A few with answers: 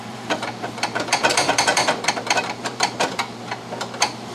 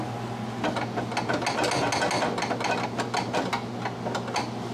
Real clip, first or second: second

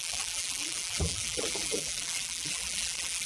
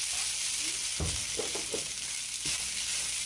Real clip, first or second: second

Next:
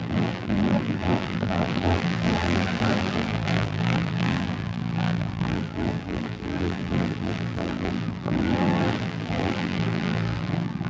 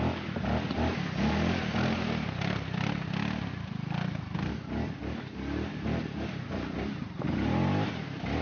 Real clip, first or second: second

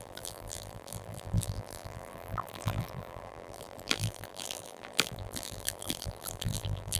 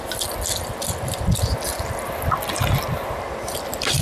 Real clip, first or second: second